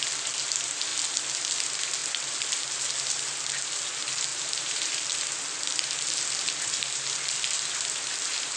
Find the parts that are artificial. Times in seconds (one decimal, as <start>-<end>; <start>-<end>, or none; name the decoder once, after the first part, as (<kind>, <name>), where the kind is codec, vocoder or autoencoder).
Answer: 4.3-4.8 (vocoder, BigVGAN v2)